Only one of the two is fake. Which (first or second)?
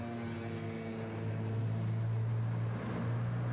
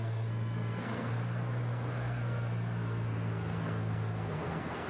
second